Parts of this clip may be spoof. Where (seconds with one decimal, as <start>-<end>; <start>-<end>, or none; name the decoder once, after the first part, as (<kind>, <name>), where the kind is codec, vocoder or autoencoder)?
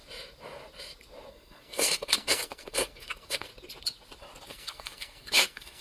1.3-3.5 (codec, SNAC); 4.5-5.8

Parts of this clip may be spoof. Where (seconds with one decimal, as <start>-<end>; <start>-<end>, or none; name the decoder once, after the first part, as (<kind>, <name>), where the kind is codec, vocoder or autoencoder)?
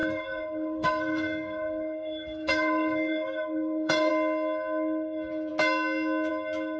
0.0-4.1 (codec, SNAC)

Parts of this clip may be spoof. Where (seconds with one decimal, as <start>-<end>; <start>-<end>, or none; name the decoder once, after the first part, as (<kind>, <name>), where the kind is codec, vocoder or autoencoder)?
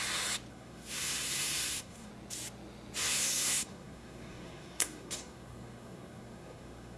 0.5-2.1 (codec, SNAC); 3.0-7.0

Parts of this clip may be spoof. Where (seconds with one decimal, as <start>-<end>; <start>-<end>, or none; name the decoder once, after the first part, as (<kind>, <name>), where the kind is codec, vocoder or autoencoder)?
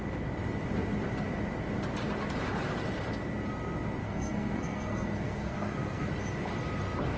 4.0-6.1 (codec, SNAC)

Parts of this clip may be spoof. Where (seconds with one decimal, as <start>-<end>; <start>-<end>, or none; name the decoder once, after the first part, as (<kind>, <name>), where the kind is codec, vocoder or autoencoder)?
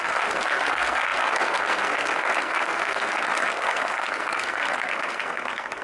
0.0-5.8 (codec, SNAC)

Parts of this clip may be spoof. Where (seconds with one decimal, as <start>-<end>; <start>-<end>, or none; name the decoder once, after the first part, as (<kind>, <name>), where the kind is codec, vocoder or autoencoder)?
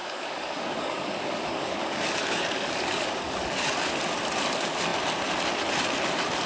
0.0-3.9 (codec, DAC)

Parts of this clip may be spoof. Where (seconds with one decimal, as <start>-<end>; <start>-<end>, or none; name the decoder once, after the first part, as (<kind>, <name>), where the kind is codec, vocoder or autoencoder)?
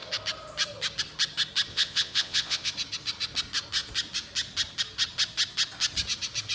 1.7-2.7 (vocoder, Vocos)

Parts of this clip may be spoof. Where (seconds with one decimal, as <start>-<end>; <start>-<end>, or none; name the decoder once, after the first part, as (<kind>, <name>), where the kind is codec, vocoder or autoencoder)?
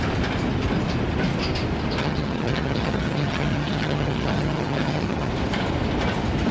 2.0-5.3 (vocoder, HiFi-GAN)